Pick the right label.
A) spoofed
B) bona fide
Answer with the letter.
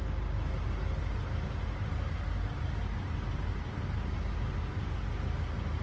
B